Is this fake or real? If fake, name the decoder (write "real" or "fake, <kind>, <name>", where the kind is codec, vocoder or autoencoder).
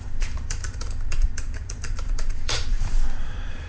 fake, vocoder, BigVGAN v2